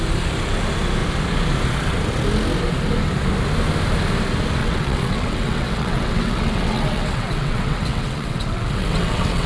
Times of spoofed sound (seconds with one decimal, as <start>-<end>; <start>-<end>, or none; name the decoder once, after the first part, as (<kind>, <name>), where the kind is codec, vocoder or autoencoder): 4.6-9.5 (vocoder, WaveNeXt)